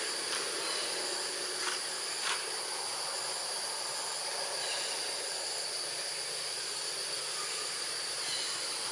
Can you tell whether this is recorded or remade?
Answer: recorded